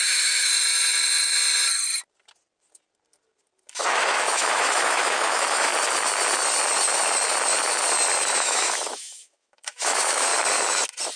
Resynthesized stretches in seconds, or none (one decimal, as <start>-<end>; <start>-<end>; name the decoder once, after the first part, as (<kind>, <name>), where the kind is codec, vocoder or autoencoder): 0.0-0.5 (autoencoder, DAC-VAE); 3.7-5.7; 8.3-10.3